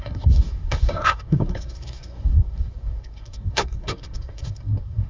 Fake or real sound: fake